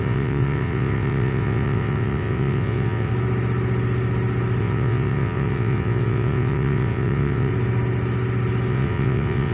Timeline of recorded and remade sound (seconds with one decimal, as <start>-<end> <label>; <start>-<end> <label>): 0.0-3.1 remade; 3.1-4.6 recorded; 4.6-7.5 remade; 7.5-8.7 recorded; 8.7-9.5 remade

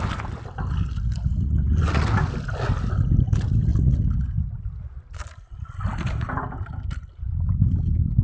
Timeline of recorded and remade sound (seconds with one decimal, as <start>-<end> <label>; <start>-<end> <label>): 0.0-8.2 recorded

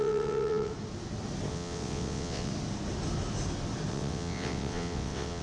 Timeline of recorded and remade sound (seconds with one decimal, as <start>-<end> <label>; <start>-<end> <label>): 0.0-0.7 remade; 0.7-1.5 recorded; 1.5-2.5 remade; 2.5-3.9 recorded; 3.9-5.4 remade

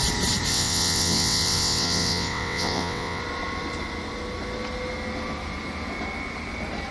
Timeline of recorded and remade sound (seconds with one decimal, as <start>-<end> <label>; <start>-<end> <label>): 0.0-0.5 recorded; 0.5-3.2 remade; 3.2-6.9 recorded

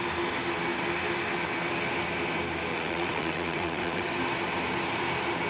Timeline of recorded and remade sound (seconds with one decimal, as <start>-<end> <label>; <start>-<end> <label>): 0.0-2.7 recorded; 2.7-4.1 remade; 4.1-5.5 recorded

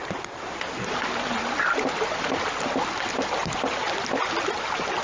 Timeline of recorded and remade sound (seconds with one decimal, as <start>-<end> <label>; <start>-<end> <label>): 0.0-5.0 recorded